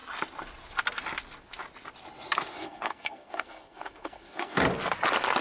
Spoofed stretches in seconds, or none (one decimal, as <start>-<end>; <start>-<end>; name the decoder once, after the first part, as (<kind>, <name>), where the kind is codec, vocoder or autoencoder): 2.5-4.6 (codec, SNAC)